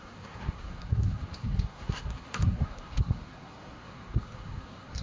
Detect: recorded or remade remade